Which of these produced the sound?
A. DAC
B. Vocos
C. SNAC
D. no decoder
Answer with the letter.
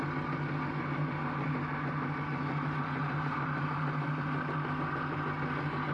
D